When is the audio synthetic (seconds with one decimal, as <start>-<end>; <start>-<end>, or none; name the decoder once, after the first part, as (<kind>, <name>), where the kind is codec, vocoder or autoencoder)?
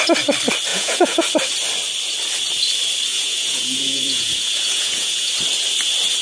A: 0.7-1.2 (vocoder, Vocos); 3.1-5.3